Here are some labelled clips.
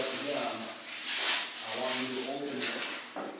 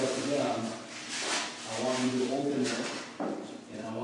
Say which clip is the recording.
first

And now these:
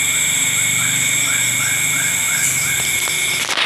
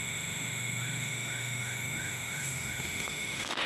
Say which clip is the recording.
first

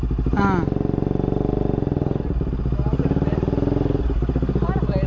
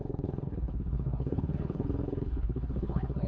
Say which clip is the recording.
first